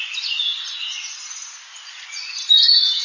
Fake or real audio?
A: real